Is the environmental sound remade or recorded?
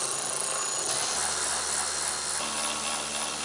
recorded